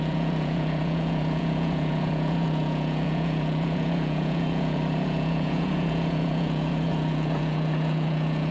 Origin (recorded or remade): remade